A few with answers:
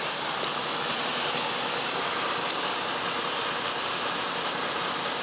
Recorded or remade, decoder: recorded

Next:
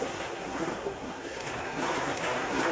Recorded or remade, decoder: remade, codec, SNAC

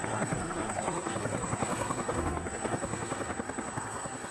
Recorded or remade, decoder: remade, codec, SNAC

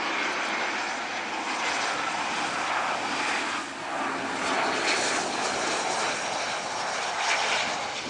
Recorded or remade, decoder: recorded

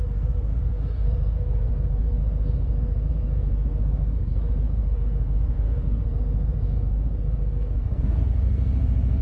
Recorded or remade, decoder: remade, codec, SNAC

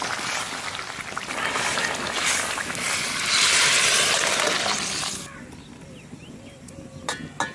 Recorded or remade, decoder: recorded